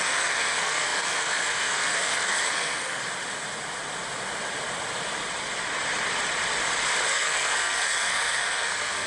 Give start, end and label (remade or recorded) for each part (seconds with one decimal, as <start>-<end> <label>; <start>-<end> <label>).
0.0-3.0 remade; 3.0-7.1 recorded; 7.1-9.1 remade